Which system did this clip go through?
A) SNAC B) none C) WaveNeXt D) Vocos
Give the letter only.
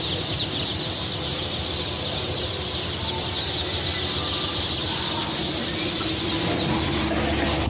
B